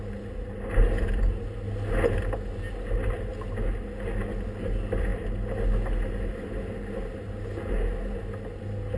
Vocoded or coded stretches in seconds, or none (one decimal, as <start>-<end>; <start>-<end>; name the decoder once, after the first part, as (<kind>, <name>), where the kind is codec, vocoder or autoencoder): none